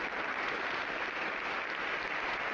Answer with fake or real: real